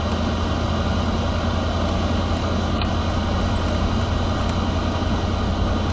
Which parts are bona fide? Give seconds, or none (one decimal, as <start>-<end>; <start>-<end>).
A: 0.0-2.4; 2.9-5.9